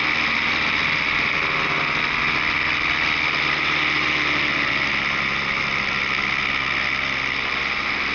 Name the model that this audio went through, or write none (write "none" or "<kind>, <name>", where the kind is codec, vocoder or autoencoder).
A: none